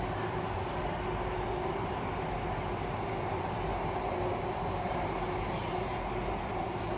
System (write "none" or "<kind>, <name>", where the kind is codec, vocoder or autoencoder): none